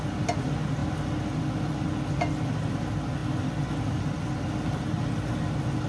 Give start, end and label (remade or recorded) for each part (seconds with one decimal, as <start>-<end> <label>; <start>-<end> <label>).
0.0-5.9 recorded